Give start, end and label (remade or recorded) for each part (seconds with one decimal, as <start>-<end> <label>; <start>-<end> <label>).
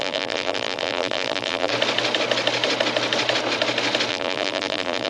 0.0-1.7 remade; 1.7-4.1 recorded; 4.1-5.1 remade